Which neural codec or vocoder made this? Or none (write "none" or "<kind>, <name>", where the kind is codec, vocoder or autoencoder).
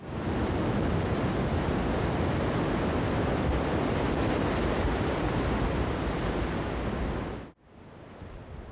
none